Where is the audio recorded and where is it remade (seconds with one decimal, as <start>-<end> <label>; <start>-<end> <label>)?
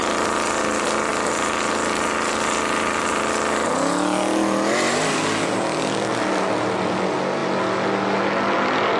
0.0-0.6 remade; 0.6-9.0 recorded